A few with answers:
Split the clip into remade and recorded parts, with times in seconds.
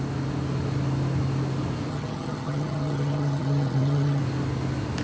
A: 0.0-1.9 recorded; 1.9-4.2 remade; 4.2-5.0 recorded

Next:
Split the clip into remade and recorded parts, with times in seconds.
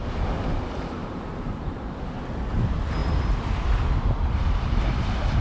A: 0.0-1.0 recorded; 1.0-2.1 remade; 2.1-3.0 recorded; 3.0-5.4 remade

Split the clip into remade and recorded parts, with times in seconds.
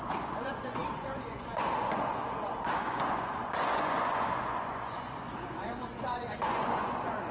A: 0.0-7.3 remade